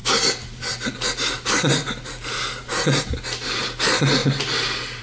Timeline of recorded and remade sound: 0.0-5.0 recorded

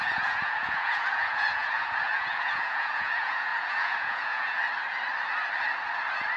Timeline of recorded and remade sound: 0.0-4.6 remade; 4.6-6.4 recorded

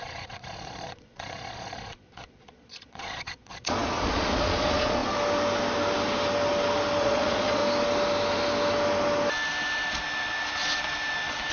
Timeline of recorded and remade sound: 0.0-5.0 remade; 5.0-7.0 recorded; 7.0-7.6 remade; 7.6-11.5 recorded